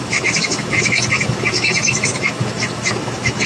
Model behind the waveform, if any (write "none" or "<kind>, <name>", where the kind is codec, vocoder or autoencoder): autoencoder, DAC-VAE